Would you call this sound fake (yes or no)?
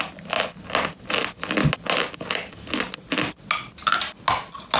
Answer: no